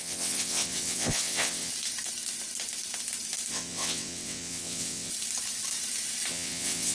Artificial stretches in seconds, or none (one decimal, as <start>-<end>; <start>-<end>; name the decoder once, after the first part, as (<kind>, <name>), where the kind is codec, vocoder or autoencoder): 0.0-1.7 (vocoder, WaveNeXt); 3.5-5.1; 6.3-6.9